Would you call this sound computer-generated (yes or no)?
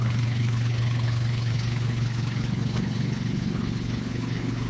yes